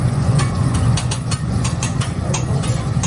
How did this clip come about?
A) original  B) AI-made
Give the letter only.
B